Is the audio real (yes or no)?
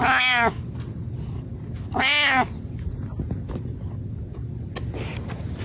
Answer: yes